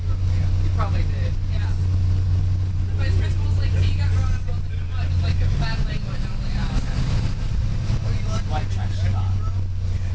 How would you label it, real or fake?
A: real